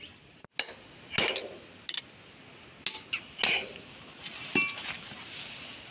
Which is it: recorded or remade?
recorded